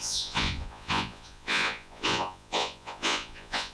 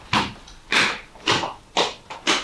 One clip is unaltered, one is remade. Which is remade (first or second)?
first